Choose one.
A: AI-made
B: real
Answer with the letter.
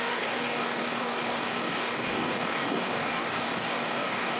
A